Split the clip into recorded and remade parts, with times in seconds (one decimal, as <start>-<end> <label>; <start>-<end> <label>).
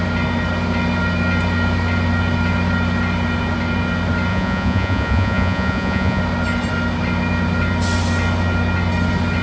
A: 0.0-4.3 recorded; 4.3-6.2 remade; 6.2-9.4 recorded